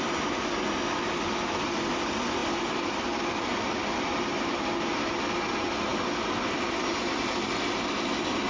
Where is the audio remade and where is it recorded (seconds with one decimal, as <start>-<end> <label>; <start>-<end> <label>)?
0.0-8.5 recorded